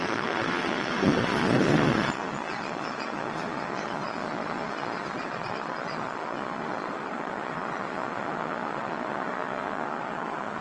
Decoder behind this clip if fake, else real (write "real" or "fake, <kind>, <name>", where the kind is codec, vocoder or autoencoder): fake, vocoder, Vocos